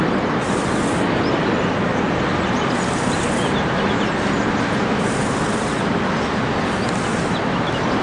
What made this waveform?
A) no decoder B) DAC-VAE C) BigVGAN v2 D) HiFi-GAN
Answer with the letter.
A